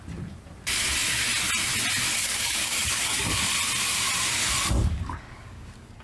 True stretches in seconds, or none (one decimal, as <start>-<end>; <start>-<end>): 0.0-2.2; 3.4-4.8